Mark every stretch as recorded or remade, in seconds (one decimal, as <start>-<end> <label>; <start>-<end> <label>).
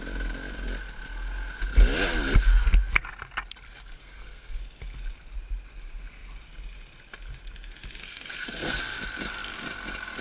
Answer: 0.0-4.0 recorded; 4.0-4.6 remade; 4.6-8.0 recorded; 8.0-8.8 remade; 8.8-10.2 recorded